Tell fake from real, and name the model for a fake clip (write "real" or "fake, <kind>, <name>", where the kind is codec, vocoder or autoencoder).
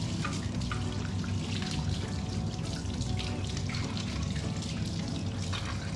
real